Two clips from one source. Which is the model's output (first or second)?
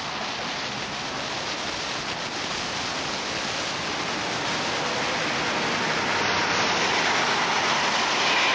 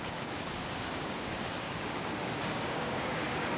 second